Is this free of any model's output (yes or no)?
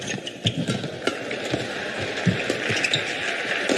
yes